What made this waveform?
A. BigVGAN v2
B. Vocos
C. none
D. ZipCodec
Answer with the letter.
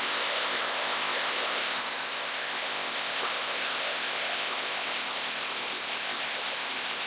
D